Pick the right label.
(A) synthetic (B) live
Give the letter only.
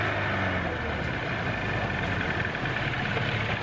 B